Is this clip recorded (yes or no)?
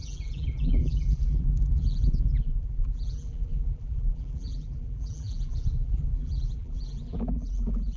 no